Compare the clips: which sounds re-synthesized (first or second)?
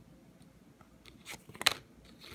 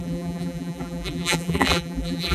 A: second